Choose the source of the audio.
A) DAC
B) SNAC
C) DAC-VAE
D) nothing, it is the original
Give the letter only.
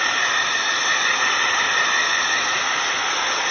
D